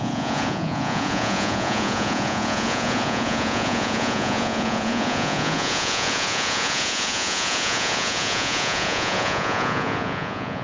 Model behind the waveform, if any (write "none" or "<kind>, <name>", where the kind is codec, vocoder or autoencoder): vocoder, Vocos